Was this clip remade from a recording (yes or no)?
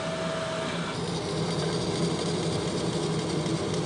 no